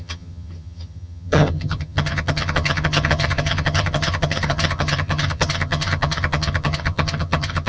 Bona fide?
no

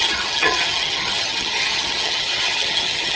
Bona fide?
no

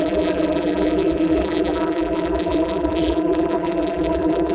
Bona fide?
no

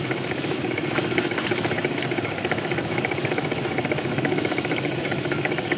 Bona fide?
no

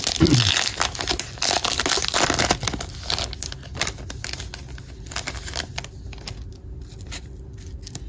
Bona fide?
yes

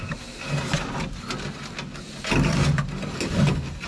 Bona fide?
yes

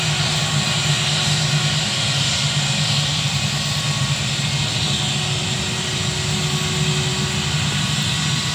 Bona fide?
yes